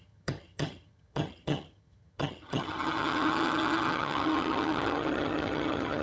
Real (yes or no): no